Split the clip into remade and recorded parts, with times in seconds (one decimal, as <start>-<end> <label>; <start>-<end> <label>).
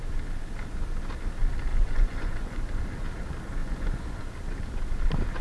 0.0-1.7 recorded; 1.7-2.6 remade; 2.6-3.6 recorded; 3.6-4.2 remade; 4.2-5.4 recorded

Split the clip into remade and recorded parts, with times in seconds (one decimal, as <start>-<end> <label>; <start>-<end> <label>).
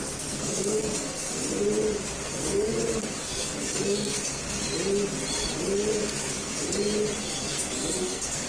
0.0-1.4 remade; 1.4-2.2 recorded; 2.2-4.6 remade; 4.6-6.0 recorded; 6.0-6.6 remade; 6.6-7.2 recorded; 7.2-8.5 remade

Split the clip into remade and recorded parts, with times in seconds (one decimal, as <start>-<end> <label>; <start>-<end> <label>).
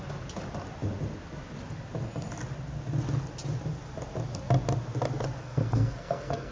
0.0-5.4 recorded; 5.4-6.5 remade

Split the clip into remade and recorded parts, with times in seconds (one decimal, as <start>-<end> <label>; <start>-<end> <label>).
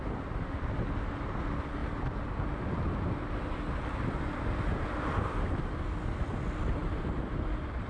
0.0-7.9 recorded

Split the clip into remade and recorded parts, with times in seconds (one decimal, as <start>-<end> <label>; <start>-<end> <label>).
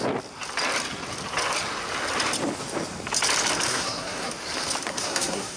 0.0-3.7 recorded; 3.7-4.3 remade; 4.3-4.9 recorded; 4.9-5.6 remade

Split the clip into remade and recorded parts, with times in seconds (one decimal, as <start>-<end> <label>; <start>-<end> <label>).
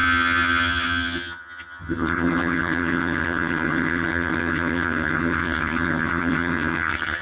0.0-7.2 remade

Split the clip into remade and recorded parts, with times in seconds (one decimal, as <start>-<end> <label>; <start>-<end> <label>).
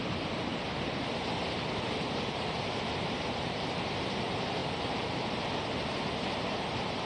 0.0-1.4 recorded; 1.4-4.1 remade; 4.1-4.6 recorded; 4.6-5.3 remade; 5.3-7.1 recorded